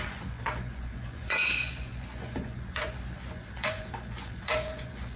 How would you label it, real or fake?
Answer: fake